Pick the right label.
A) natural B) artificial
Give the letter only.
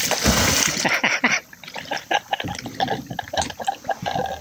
A